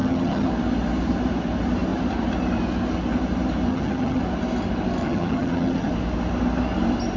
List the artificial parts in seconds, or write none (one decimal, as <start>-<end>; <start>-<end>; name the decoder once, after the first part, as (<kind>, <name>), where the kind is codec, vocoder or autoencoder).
0.0-0.5 (vocoder, HiFi-GAN); 3.7-4.2; 5.0-5.9